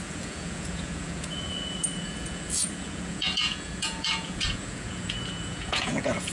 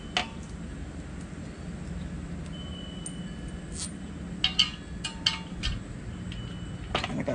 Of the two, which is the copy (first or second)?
first